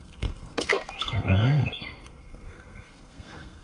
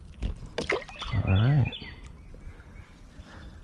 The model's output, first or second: first